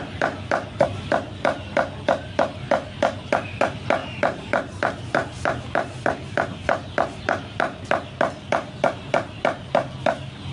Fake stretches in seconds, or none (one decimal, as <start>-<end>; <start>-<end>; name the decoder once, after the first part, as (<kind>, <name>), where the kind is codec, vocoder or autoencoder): 4.0-4.7 (vocoder, BigVGAN v2); 5.2-8.2